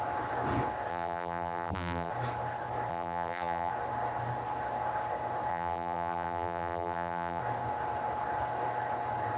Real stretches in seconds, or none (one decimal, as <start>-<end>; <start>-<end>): 0.0-0.9; 2.1-2.9; 3.7-5.5; 7.4-9.4